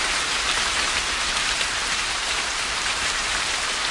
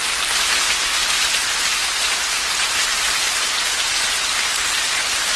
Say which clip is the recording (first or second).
second